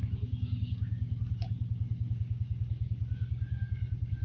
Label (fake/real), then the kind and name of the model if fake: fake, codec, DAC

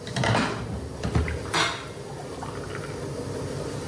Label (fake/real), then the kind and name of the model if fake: real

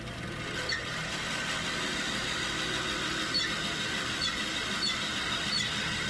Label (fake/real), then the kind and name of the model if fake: real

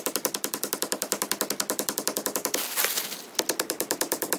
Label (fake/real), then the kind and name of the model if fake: real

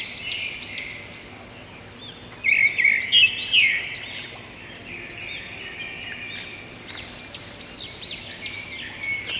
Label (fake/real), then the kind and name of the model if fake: real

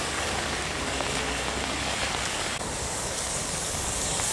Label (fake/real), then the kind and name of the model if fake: fake, codec, DAC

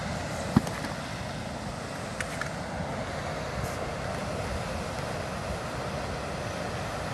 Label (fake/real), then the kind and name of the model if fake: real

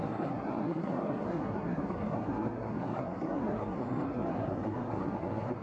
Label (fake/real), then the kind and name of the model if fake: fake, codec, SNAC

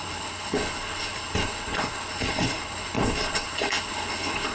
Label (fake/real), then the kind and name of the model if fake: fake, codec, HILCodec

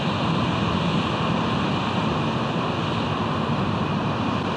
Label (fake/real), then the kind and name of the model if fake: real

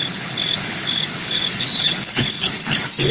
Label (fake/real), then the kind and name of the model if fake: fake, codec, HILCodec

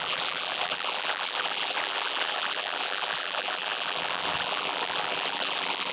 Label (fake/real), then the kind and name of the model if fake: fake, vocoder, BigVGAN v2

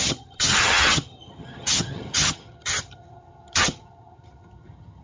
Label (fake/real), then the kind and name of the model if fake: fake, vocoder, HiFi-GAN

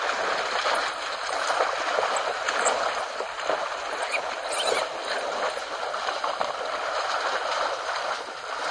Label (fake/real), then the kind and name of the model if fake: real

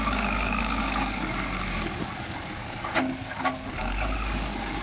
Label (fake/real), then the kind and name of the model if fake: fake, codec, DAC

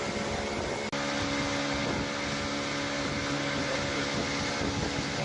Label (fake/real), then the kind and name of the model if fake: real